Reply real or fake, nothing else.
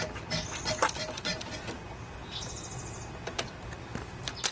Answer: real